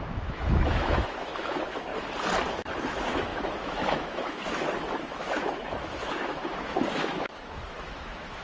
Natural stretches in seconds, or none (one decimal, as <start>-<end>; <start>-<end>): 1.9-2.5